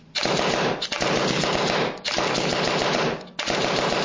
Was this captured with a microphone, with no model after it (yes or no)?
yes